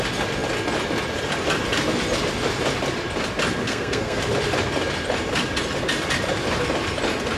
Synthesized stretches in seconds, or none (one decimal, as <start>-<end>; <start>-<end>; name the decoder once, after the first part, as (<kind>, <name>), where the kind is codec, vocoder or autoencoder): 3.6-4.2 (codec, SNAC)